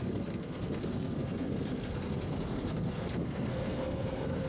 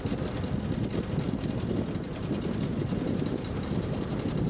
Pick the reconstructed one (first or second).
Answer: first